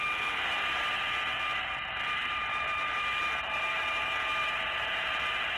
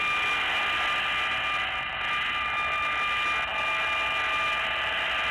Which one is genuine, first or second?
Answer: second